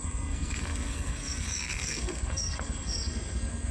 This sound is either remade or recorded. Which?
remade